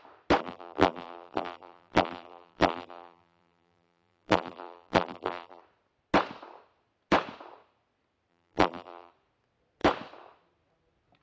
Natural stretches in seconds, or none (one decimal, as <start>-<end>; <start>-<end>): 0.0-0.4; 5.6-8.3; 9.1-11.2

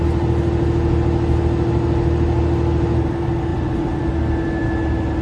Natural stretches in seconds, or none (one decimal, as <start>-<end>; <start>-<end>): 0.0-3.5; 4.1-5.2

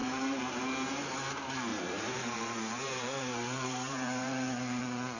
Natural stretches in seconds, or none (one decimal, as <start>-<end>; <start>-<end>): 0.6-1.7; 4.8-5.2

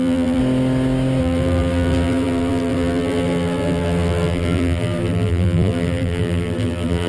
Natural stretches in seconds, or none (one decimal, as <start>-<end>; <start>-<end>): 0.4-1.2

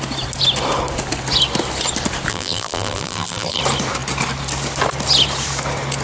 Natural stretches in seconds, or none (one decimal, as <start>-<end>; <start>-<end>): 0.0-2.3; 3.6-6.0

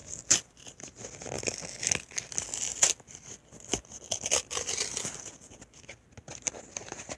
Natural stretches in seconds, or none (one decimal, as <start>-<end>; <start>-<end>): 0.0-2.7; 5.6-7.2